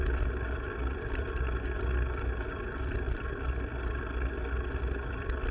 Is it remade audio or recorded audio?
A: recorded